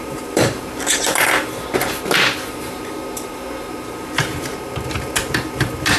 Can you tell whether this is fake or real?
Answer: fake